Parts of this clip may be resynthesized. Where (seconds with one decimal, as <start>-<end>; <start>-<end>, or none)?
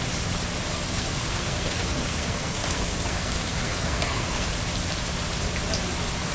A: 0.7-4.5